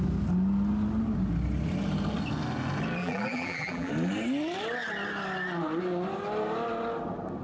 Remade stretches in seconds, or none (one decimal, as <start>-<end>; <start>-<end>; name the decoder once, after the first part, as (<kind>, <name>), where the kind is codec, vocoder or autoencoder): 3.0-3.9 (vocoder, BigVGAN v2)